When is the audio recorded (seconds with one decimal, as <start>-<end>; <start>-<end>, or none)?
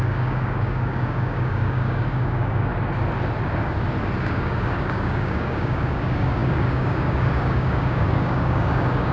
2.7-4.2